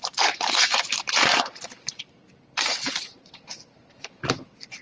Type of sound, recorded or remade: remade